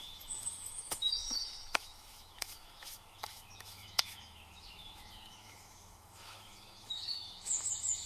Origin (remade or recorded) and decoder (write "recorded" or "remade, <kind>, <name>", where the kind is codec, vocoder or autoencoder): remade, autoencoder, DAC-VAE